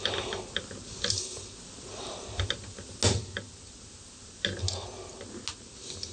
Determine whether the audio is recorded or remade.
recorded